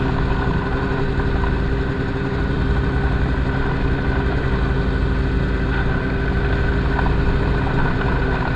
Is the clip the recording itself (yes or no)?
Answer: yes